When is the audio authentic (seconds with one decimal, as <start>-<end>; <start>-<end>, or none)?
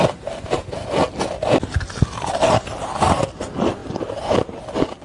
0.0-5.0